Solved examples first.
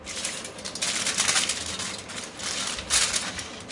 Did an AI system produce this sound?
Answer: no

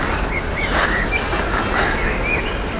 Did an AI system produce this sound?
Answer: no